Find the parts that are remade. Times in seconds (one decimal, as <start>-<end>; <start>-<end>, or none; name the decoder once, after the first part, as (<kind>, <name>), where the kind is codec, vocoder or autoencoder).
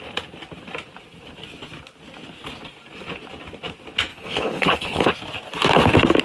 4.1-5.1 (codec, HILCodec)